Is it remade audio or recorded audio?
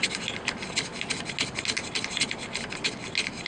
recorded